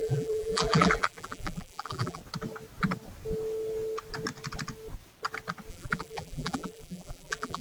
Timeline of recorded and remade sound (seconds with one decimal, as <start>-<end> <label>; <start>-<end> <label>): 0.0-2.2 remade; 2.2-5.7 recorded; 5.7-7.6 remade